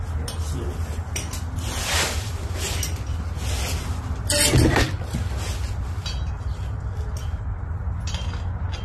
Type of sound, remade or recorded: recorded